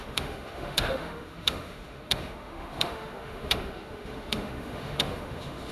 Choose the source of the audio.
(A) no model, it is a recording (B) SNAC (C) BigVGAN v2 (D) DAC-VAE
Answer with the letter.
D